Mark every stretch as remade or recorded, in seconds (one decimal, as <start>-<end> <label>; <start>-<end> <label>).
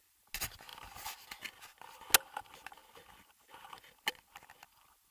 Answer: 0.0-5.1 recorded